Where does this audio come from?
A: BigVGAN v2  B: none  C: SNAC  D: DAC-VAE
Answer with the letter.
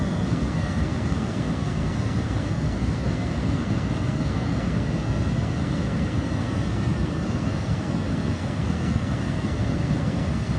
C